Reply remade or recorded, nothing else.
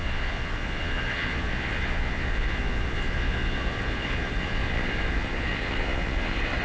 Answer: remade